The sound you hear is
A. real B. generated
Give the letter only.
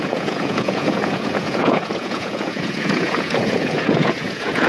B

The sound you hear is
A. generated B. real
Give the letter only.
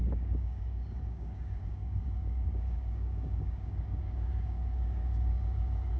A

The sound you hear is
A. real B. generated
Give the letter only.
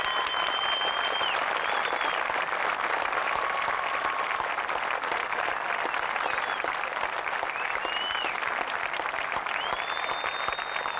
A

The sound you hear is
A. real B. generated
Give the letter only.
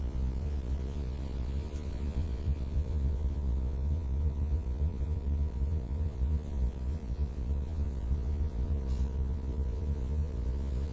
B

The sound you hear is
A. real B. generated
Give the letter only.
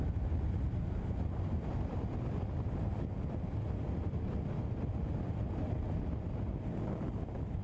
A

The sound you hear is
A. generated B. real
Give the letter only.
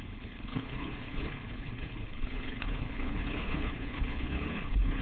A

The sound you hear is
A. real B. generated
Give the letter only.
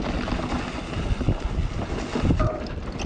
A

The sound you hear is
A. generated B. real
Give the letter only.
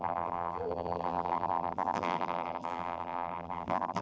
A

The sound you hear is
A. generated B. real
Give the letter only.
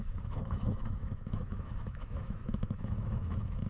A